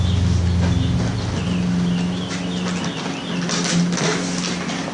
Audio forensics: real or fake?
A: real